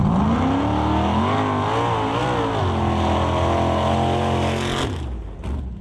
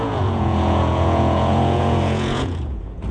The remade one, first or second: second